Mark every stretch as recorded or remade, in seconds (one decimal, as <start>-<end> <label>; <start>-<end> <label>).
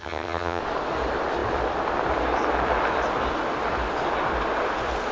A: 0.0-0.6 remade; 0.6-5.1 recorded